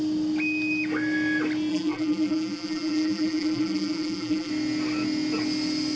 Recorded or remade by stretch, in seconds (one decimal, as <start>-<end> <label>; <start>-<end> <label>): 0.0-1.7 recorded; 1.7-4.5 remade; 4.5-6.0 recorded